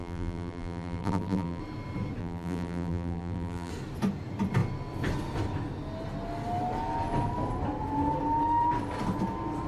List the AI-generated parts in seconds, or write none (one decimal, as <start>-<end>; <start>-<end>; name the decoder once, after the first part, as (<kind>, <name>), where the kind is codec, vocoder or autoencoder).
0.0-1.6 (vocoder, BigVGAN v2); 2.2-3.7